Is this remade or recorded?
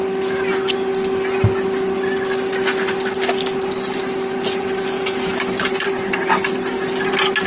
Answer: recorded